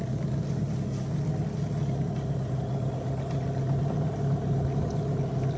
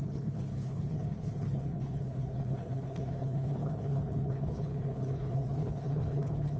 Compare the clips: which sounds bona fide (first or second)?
first